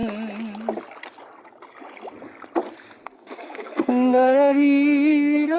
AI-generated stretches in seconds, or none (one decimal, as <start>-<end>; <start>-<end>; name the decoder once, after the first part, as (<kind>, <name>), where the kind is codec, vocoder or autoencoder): 3.0-5.6 (codec, SNAC)